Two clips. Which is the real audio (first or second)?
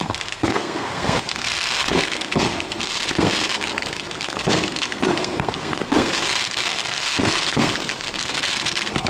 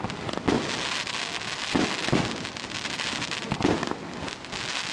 second